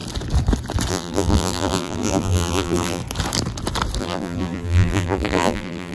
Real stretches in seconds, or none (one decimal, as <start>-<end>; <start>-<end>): 0.0-0.9; 3.0-4.0